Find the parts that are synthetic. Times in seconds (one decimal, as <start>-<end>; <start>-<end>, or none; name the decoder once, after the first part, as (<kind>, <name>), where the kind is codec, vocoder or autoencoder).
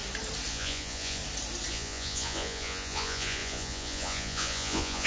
0.5-1.2 (vocoder, Vocos); 1.7-5.1